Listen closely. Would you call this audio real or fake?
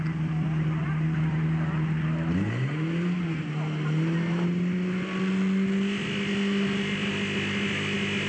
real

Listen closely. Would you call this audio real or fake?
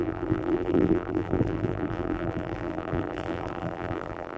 fake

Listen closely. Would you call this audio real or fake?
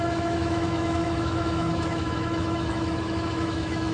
fake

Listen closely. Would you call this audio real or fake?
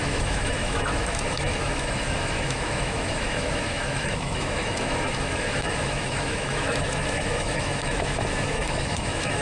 fake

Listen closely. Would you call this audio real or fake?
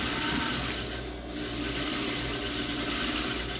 real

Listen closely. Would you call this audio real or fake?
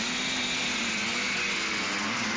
real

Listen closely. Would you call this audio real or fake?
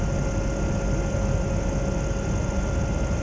real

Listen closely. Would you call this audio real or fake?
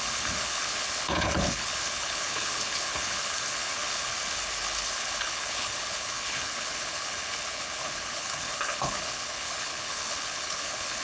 fake